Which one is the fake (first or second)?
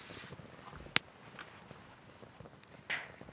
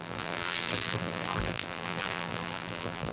second